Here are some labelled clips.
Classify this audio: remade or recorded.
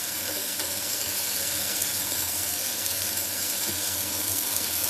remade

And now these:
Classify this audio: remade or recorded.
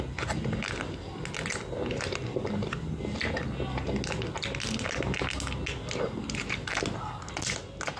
recorded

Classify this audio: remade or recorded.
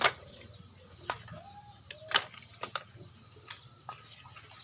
recorded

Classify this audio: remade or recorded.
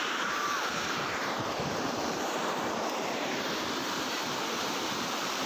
remade